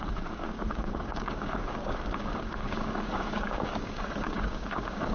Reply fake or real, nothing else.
fake